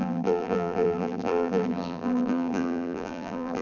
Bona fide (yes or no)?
no